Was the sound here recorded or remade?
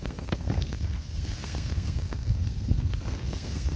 remade